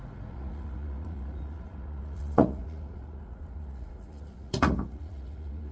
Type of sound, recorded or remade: remade